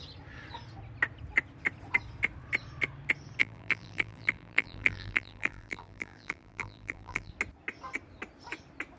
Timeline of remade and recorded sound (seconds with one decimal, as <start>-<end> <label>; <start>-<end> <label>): 0.0-3.4 recorded; 3.4-7.3 remade; 7.3-9.0 recorded